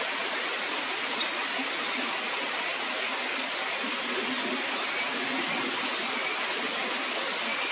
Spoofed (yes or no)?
no